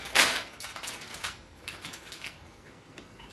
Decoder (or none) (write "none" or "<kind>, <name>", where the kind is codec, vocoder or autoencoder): codec, SNAC